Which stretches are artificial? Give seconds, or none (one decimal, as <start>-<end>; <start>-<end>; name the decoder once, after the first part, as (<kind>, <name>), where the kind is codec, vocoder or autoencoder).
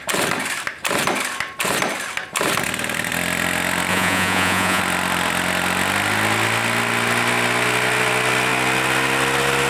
3.9-4.8 (vocoder, Vocos)